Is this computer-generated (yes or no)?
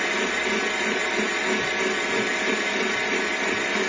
no